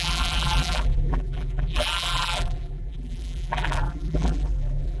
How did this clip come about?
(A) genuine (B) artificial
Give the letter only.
B